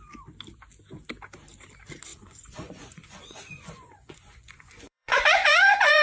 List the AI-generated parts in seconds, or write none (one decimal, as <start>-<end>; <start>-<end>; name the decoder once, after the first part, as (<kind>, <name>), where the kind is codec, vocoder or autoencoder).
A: 2.1-6.0 (vocoder, Vocos)